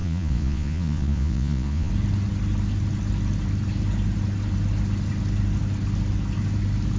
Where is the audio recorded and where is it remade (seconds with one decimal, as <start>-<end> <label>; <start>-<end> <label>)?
0.0-1.9 remade; 1.9-7.0 recorded